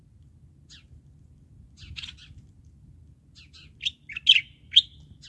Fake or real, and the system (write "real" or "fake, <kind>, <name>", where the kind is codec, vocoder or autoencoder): real